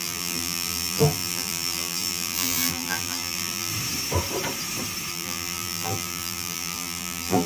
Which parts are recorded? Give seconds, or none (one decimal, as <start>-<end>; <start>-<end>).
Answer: 3.7-5.1